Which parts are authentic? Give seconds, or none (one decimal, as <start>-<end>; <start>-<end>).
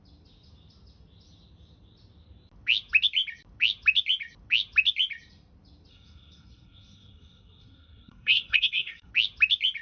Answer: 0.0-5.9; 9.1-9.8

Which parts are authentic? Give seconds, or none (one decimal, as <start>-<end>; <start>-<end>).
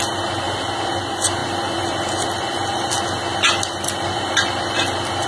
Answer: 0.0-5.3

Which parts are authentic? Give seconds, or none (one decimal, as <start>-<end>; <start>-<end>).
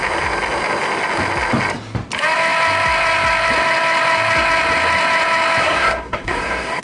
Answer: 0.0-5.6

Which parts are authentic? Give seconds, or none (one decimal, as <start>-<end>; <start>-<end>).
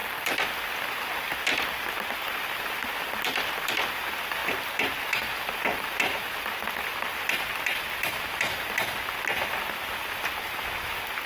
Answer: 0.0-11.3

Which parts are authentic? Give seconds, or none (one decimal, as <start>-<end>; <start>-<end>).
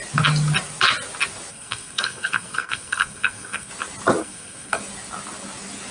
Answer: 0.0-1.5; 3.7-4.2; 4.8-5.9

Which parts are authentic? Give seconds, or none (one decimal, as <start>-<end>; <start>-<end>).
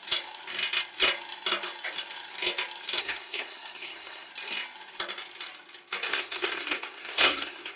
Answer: 0.0-3.0; 4.3-6.1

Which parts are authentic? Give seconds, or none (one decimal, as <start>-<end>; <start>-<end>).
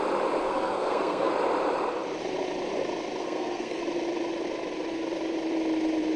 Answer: 0.0-0.4; 1.3-3.2; 3.8-6.2